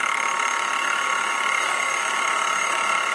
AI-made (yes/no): yes